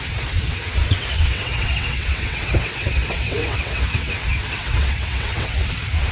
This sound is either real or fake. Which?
fake